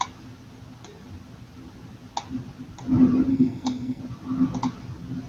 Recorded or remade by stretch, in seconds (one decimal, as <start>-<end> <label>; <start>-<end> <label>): 0.0-3.3 recorded; 3.3-4.0 remade; 4.0-5.3 recorded